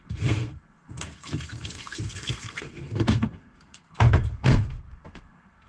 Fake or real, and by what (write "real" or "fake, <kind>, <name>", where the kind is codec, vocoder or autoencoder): fake, codec, SNAC